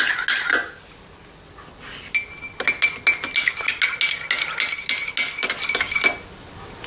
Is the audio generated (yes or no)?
no